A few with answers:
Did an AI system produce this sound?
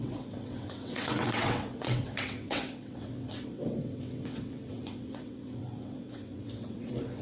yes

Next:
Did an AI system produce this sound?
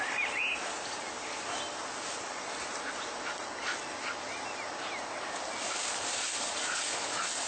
no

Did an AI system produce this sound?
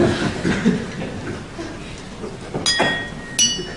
no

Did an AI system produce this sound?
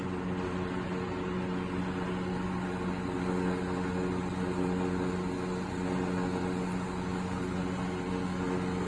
no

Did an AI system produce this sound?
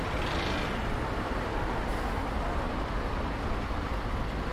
no